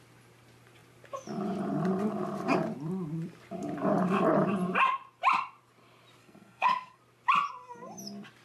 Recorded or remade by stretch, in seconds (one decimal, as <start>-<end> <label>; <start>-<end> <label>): 0.0-6.2 recorded; 6.2-7.0 remade; 7.0-8.4 recorded